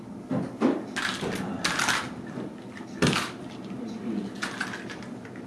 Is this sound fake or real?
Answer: real